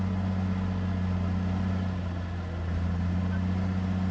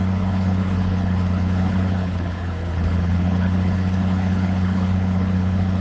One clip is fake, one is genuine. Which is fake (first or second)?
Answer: second